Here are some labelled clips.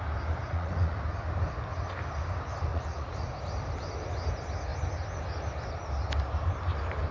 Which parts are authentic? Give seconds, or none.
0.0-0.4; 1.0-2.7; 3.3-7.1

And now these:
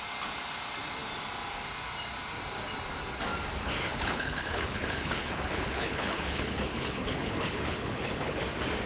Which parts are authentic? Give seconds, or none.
0.0-3.8; 8.4-8.9

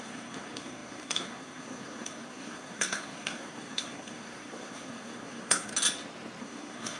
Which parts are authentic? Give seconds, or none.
5.7-6.4

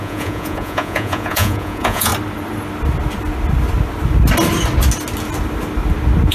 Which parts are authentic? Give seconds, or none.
2.1-6.3